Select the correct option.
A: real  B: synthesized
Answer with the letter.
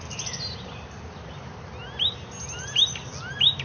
A